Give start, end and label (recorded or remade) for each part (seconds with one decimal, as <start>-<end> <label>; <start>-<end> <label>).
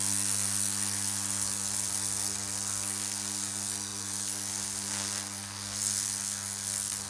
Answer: 0.0-7.1 remade